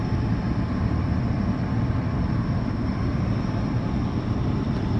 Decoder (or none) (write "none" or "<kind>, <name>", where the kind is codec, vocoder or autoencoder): vocoder, BigVGAN v2